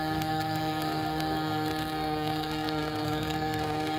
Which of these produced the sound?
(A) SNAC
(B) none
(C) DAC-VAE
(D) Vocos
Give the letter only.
A